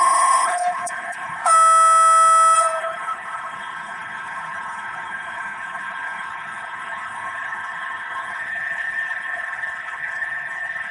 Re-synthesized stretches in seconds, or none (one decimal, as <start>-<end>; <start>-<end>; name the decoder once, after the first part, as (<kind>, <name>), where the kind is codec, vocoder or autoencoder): 0.0-1.4 (codec, HILCodec); 2.8-10.9